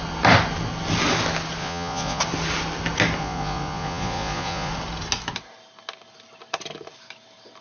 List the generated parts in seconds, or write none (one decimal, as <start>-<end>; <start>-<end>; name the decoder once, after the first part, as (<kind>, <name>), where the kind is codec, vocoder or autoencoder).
1.6-2.2 (vocoder, Vocos); 3.2-4.7